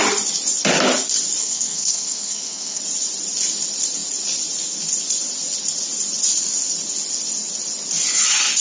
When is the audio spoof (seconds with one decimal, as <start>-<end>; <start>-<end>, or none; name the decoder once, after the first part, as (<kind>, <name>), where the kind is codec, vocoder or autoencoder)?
1.4-2.8 (codec, SNAC)